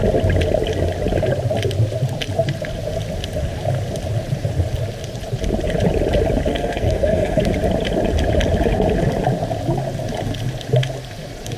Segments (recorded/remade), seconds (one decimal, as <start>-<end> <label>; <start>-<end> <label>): 0.0-6.5 recorded; 6.5-7.5 remade; 7.5-11.6 recorded